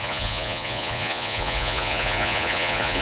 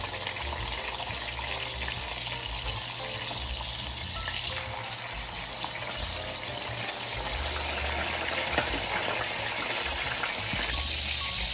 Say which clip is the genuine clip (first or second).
second